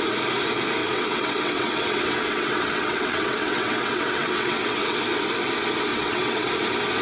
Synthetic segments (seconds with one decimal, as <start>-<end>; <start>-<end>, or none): 0.8-5.0; 5.9-6.5